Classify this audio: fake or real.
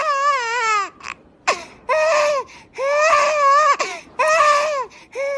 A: real